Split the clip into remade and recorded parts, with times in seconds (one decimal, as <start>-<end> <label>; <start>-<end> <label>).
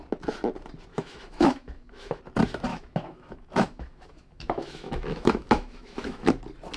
0.0-0.9 recorded; 0.9-2.2 remade; 2.2-2.7 recorded; 2.7-6.3 remade; 6.3-6.8 recorded